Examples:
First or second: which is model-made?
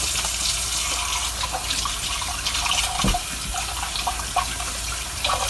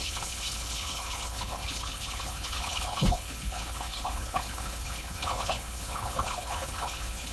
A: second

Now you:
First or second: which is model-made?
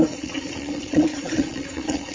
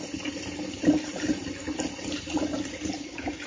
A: first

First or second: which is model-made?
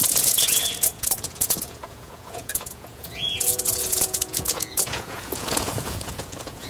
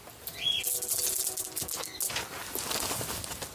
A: first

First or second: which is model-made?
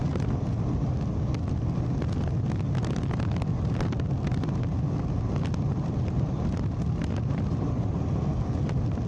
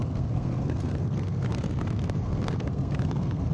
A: second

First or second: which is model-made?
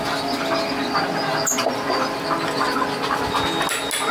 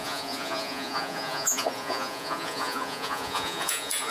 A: second